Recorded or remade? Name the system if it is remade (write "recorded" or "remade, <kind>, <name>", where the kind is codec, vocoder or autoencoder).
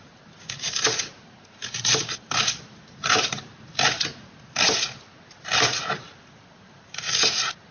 recorded